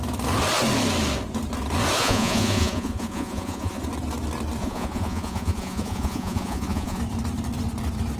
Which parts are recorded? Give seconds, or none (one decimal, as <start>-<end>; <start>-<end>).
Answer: 0.0-2.0; 3.8-4.6; 7.0-8.2